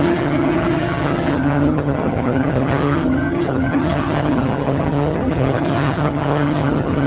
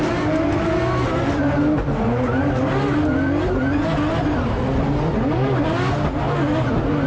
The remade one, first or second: first